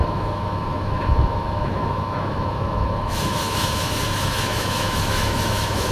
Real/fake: fake